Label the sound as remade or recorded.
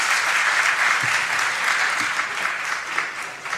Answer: recorded